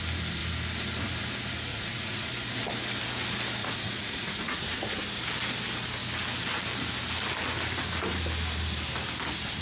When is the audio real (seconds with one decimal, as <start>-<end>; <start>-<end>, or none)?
0.0-1.7; 2.3-3.6; 5.0-9.6

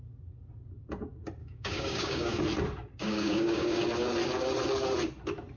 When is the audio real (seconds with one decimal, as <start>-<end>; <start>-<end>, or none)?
0.0-1.4; 2.4-3.0; 3.8-5.6